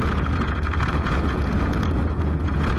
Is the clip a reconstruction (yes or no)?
yes